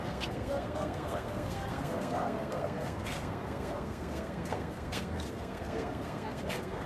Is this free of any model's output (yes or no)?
no